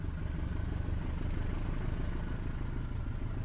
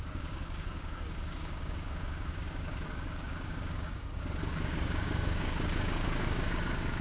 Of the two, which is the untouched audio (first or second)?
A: first